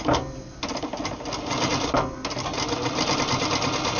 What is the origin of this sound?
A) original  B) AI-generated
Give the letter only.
A